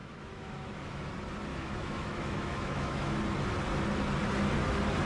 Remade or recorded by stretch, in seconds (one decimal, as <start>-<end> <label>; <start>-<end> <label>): 0.0-1.1 remade; 1.1-1.5 recorded; 1.5-3.2 remade; 3.2-5.1 recorded